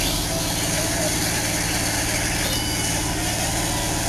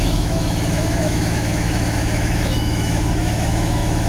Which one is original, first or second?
first